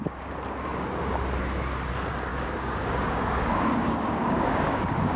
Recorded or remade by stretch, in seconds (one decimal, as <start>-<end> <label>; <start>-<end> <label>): 0.0-2.3 recorded; 2.3-5.2 remade